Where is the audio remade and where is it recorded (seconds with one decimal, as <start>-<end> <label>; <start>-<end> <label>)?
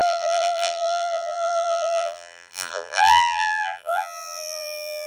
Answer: 0.0-5.1 remade